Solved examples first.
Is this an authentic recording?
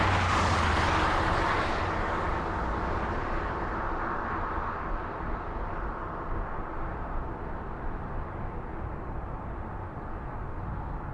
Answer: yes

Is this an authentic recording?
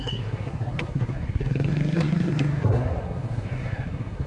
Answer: no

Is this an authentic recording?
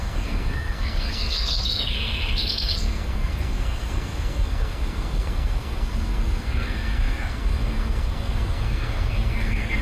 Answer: no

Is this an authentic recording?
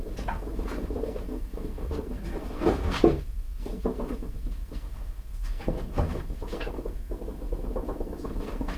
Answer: no